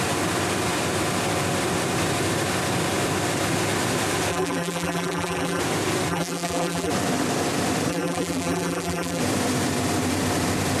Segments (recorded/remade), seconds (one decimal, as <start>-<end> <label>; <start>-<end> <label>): 0.0-4.3 recorded; 4.3-5.6 remade; 5.6-6.1 recorded; 6.1-6.9 remade; 6.9-7.9 recorded; 7.9-9.2 remade; 9.2-10.8 recorded